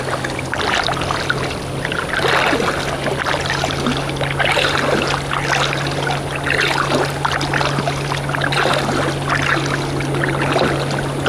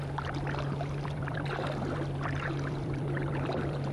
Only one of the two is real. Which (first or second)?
first